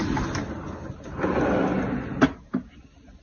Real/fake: real